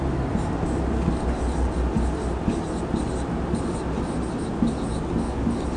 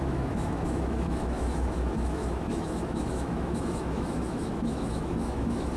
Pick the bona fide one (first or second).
first